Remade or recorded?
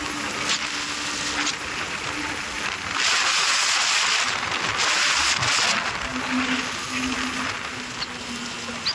recorded